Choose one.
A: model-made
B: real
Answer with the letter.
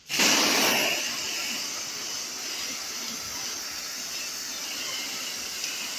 B